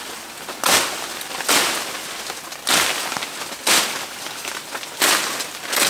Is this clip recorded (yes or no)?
yes